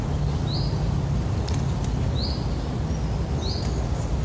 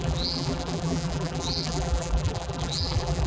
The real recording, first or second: first